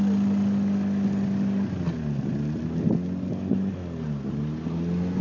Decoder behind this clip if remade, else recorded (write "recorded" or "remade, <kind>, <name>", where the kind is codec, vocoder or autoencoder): recorded